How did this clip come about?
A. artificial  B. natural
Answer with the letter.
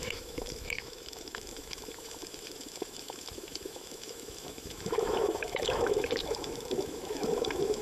A